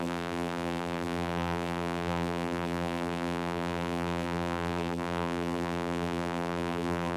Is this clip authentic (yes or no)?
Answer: no